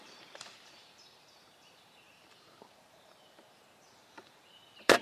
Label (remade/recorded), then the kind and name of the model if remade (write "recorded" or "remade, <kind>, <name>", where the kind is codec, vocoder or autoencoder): remade, vocoder, BigVGAN v2